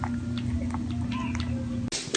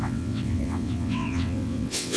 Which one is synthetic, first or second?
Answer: second